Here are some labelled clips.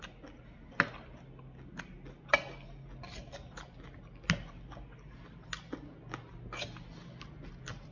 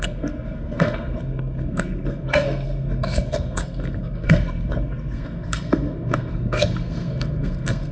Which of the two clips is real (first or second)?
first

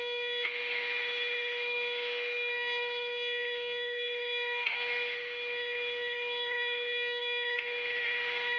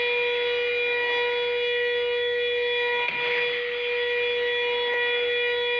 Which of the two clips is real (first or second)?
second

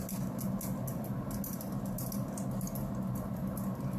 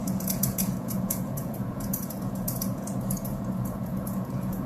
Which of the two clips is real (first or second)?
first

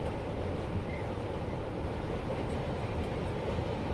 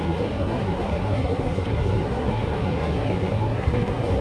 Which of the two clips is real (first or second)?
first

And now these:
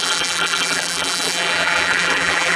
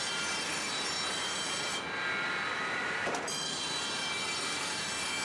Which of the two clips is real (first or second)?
second